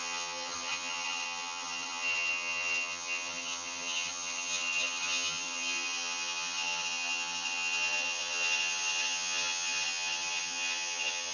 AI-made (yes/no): yes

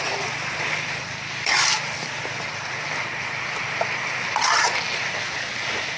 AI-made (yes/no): no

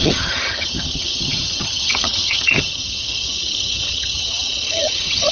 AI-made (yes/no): yes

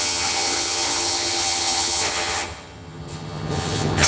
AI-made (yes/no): yes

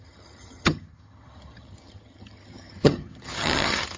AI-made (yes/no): yes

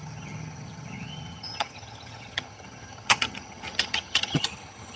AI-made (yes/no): yes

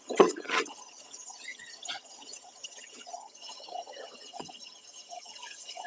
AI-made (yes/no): yes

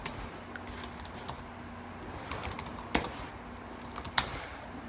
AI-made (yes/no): no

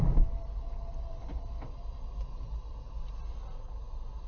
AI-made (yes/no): no